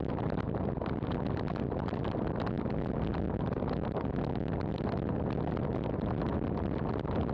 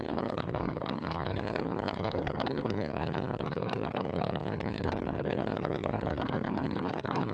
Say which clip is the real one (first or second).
first